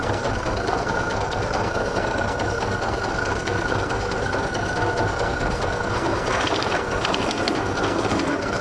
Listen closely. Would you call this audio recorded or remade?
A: remade